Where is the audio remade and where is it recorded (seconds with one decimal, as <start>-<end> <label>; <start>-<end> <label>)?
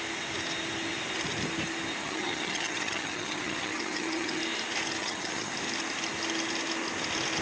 0.0-2.0 recorded; 2.0-4.4 remade; 4.4-5.0 recorded; 5.0-5.5 remade; 5.5-7.4 recorded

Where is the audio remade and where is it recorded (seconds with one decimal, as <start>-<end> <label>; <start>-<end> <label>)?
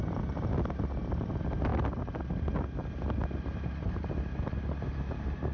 0.0-5.5 recorded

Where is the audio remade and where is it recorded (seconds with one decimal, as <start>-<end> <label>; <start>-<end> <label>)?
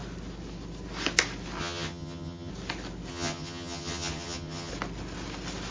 0.0-1.6 recorded; 1.6-2.5 remade; 2.5-3.1 recorded; 3.1-4.7 remade; 4.7-5.7 recorded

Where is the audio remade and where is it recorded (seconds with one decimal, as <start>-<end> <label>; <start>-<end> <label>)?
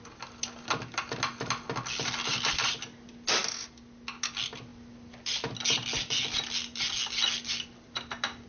0.0-8.5 recorded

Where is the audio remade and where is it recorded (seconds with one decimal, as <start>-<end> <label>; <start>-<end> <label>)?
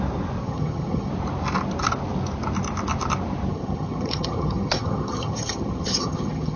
0.0-0.4 recorded; 0.4-1.1 remade; 1.1-3.5 recorded; 3.5-6.6 remade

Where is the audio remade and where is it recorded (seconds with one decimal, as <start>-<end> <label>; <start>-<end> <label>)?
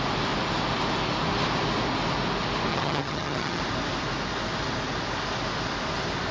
0.0-2.7 recorded; 2.7-3.6 remade; 3.6-6.3 recorded